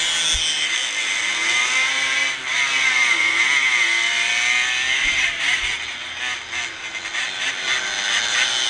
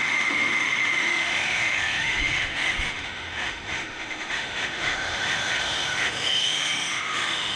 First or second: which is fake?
second